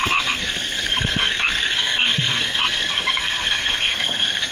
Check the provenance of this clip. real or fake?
fake